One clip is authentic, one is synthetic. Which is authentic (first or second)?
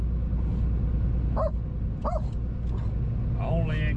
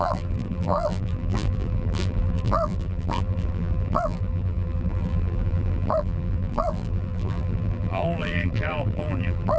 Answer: first